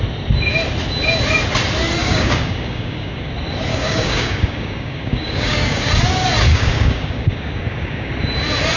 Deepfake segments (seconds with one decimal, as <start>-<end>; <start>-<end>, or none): 2.0-3.3; 3.7-5.9; 6.5-8.1